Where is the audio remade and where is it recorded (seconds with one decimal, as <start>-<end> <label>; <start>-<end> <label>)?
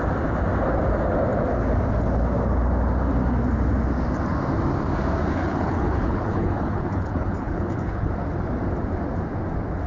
0.0-5.4 recorded; 5.4-8.1 remade; 8.1-9.9 recorded